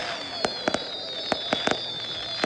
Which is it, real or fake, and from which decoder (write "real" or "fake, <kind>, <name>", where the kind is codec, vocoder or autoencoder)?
real